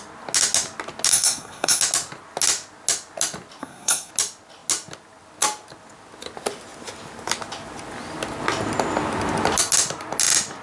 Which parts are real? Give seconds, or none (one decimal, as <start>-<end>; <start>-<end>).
0.0-1.1; 1.8-3.6; 4.1-10.6